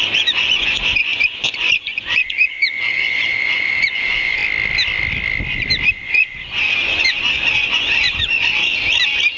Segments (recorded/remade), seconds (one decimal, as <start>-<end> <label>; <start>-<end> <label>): 0.0-4.4 remade; 4.4-5.9 recorded; 5.9-8.5 remade; 8.5-9.4 recorded